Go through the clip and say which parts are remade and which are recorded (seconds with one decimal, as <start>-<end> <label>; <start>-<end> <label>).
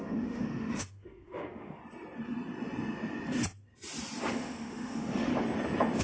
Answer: 0.0-1.8 remade; 1.8-4.3 recorded; 4.3-5.3 remade; 5.3-6.0 recorded